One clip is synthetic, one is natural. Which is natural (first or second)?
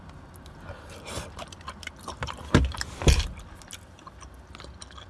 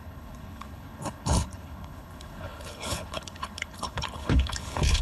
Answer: first